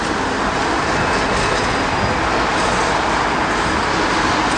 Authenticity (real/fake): real